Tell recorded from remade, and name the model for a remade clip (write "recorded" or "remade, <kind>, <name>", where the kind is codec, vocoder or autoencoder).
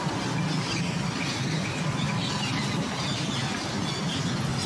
recorded